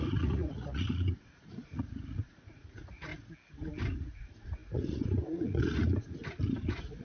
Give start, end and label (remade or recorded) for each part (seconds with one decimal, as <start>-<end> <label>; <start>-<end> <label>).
0.0-3.1 remade; 3.1-4.0 recorded; 4.0-6.2 remade; 6.2-7.0 recorded